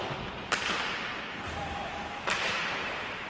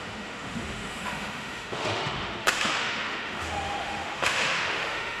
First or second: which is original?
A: first